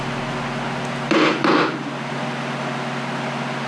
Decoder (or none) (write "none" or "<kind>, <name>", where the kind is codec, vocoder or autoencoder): none